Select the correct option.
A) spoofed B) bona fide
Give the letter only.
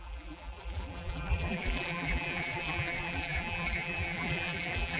A